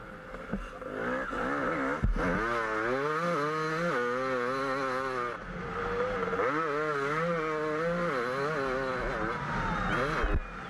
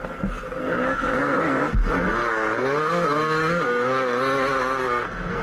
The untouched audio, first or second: first